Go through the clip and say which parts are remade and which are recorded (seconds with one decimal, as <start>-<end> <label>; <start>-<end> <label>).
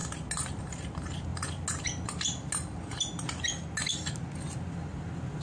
0.0-5.4 recorded